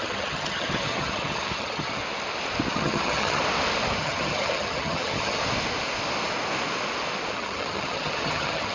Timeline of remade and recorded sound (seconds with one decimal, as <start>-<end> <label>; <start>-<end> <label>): 0.0-2.0 remade; 2.0-2.7 recorded; 2.7-3.4 remade; 3.4-4.0 recorded; 4.0-5.4 remade; 5.4-7.3 recorded; 7.3-8.7 remade